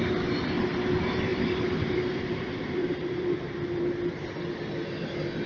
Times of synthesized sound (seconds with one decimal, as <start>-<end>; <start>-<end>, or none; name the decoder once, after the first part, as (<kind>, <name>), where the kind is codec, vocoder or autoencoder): 1.3-4.6 (vocoder, BigVGAN v2)